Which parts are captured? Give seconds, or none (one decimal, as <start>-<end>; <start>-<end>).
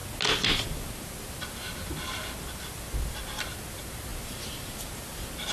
0.0-4.1; 5.1-5.5